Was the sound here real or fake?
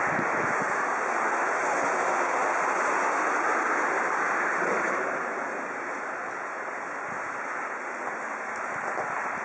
real